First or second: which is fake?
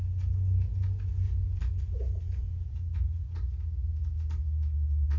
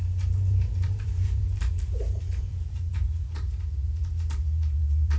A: second